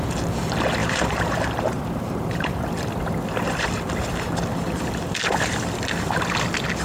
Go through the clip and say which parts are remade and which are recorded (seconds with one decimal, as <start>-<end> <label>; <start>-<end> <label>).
0.0-0.8 recorded; 0.8-2.6 remade; 2.6-6.8 recorded